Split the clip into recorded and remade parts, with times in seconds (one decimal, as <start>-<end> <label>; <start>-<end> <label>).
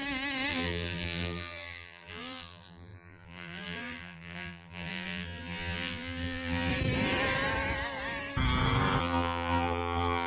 0.0-0.5 recorded; 0.5-6.7 remade; 6.7-9.0 recorded; 9.0-10.3 remade